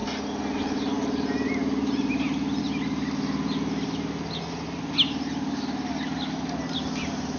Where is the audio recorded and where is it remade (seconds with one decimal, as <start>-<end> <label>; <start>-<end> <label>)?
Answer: 0.0-7.4 recorded